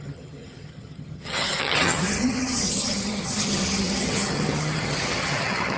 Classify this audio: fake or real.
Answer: fake